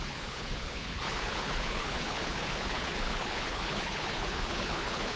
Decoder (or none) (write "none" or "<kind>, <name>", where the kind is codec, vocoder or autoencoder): codec, HILCodec